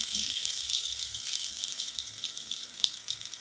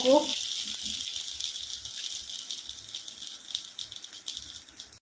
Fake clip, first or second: first